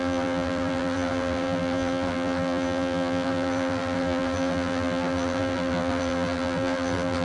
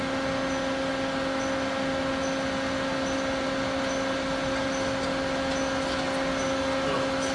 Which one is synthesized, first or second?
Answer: first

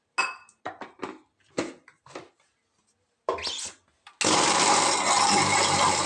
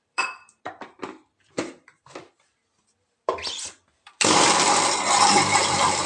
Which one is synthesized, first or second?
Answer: second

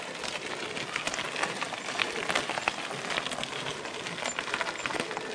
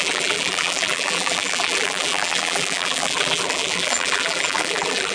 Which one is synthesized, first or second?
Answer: second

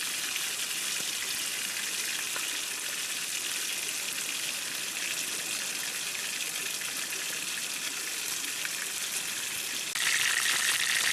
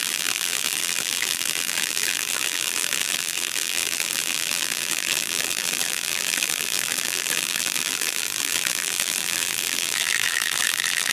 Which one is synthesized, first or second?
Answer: second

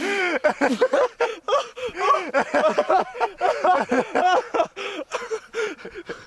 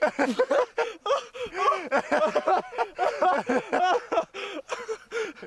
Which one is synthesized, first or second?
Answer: first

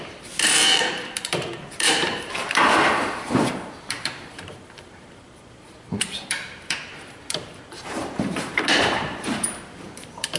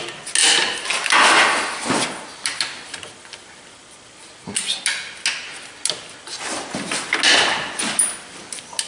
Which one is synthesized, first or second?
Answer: first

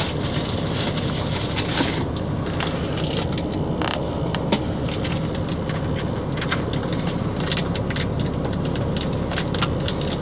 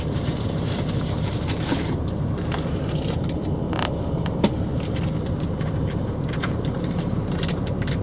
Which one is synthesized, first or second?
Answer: second